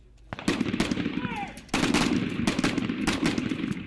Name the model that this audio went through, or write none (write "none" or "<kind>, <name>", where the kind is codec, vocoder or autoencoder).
none